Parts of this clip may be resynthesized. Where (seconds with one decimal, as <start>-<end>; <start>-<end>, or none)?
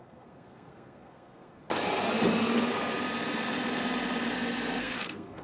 0.0-1.6; 4.8-5.4